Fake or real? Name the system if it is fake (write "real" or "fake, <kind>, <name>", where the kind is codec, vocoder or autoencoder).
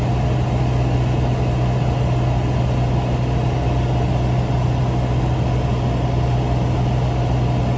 real